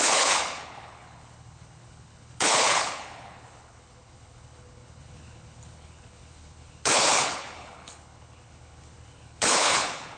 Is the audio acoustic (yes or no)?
no